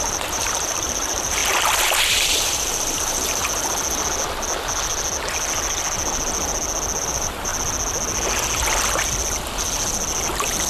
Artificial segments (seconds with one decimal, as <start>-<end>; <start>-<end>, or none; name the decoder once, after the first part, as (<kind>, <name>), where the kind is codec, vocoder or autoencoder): 0.0-1.4 (vocoder, BigVGAN v2); 2.1-3.4; 7.0-7.5